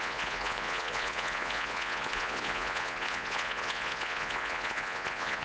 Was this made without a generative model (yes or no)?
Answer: no